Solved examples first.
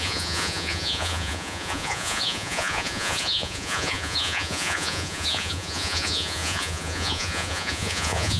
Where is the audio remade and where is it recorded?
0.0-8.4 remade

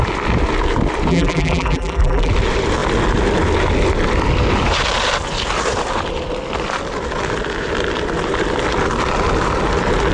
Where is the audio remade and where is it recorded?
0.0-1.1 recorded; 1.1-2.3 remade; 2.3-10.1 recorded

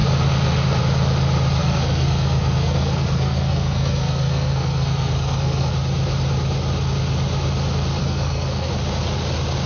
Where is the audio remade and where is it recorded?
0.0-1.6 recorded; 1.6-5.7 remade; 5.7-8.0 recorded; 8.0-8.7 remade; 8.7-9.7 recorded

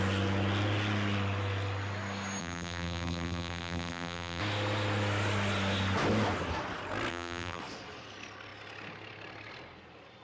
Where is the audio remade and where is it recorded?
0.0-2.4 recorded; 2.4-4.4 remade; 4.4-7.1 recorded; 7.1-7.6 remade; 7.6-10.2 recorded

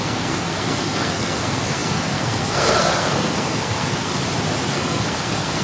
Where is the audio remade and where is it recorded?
0.0-4.2 remade; 4.2-4.7 recorded; 4.7-5.6 remade

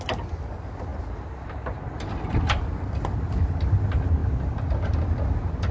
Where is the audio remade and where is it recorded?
0.0-5.7 recorded

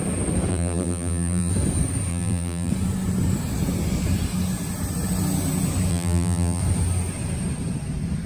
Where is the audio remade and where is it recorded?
0.0-0.5 recorded; 0.5-1.5 remade; 1.5-2.1 recorded; 2.1-2.7 remade; 2.7-5.9 recorded; 5.9-6.6 remade; 6.6-8.3 recorded